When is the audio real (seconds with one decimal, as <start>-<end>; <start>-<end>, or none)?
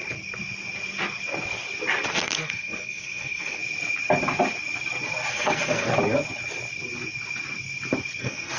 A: 0.0-2.1; 3.6-5.3; 5.9-8.2